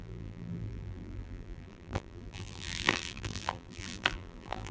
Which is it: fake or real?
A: fake